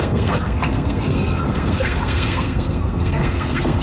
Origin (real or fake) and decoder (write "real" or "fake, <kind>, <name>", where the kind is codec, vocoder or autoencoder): fake, codec, SNAC